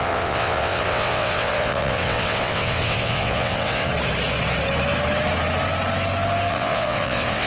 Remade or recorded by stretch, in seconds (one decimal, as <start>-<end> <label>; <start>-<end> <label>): 0.0-3.9 remade; 3.9-6.5 recorded; 6.5-7.5 remade